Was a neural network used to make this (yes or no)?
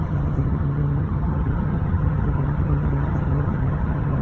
yes